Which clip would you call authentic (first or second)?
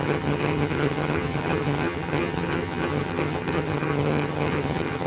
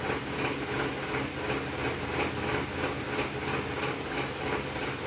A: second